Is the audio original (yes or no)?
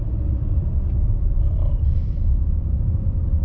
no